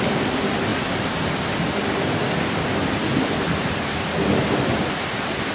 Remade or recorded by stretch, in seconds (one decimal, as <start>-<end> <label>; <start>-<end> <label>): 0.0-0.7 remade; 0.7-1.6 recorded; 1.6-5.5 remade